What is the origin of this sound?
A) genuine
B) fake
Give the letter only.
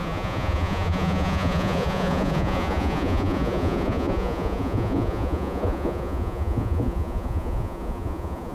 B